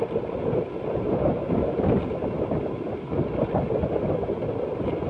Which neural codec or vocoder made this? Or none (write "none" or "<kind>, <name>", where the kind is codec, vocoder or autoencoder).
vocoder, BigVGAN v2